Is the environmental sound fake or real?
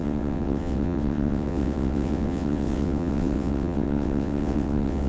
fake